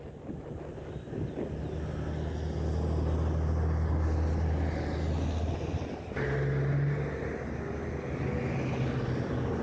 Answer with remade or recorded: recorded